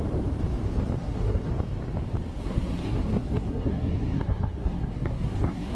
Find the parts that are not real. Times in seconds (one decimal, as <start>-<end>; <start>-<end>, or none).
1.0-1.5; 2.3-5.8

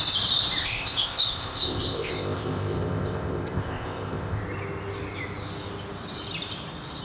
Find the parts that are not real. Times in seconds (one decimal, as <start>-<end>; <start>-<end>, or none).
0.6-4.4

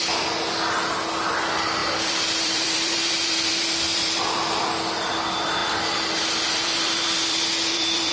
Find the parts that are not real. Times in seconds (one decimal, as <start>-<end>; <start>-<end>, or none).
1.8-4.6; 5.6-8.1

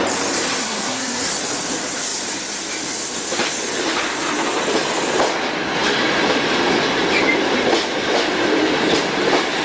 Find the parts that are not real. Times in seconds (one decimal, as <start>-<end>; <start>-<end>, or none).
0.6-1.3

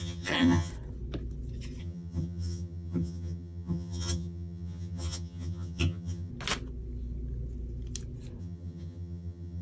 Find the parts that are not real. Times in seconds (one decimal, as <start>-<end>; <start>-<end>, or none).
0.0-0.7; 1.8-6.3; 8.4-9.6